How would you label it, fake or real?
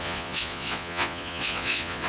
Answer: fake